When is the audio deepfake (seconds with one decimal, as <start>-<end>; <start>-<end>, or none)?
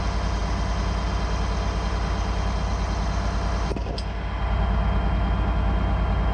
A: none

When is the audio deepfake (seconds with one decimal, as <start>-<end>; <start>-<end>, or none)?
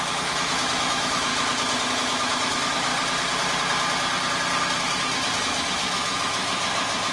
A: 0.0-1.3; 1.9-2.9; 5.4-7.1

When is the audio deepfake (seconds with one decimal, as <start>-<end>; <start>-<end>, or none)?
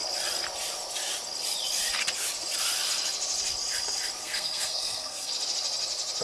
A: 4.2-5.3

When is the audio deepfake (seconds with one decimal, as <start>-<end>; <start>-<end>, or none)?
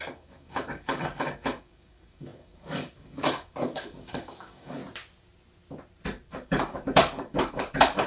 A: 0.0-4.8; 6.3-8.1